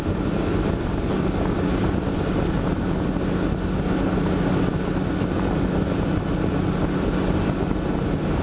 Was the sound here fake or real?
real